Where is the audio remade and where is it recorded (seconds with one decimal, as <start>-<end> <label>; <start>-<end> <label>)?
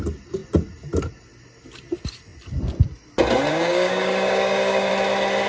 0.0-3.5 recorded; 3.5-4.9 remade; 4.9-5.5 recorded